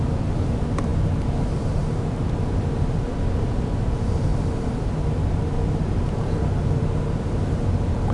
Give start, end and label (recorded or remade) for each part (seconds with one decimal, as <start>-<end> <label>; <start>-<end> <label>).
0.0-3.1 remade; 3.1-3.7 recorded; 3.7-4.3 remade; 4.3-5.1 recorded; 5.1-8.1 remade